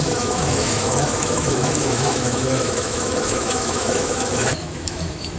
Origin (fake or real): fake